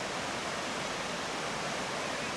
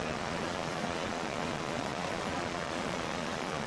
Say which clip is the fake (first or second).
second